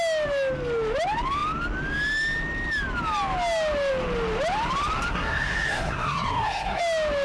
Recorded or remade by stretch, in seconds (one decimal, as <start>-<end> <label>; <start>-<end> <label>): 0.0-5.1 recorded; 5.1-6.8 remade; 6.8-7.2 recorded